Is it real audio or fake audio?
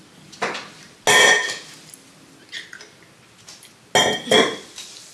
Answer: real